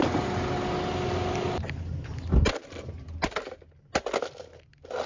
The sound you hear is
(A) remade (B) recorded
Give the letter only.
B